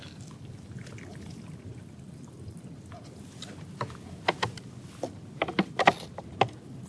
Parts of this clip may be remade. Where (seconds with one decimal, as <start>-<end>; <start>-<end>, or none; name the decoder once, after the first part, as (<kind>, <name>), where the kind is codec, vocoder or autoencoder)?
1.7-2.9 (vocoder, BigVGAN v2)